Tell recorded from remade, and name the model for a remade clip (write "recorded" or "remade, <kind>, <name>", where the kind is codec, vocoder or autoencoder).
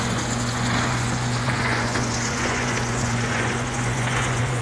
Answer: remade, vocoder, Vocos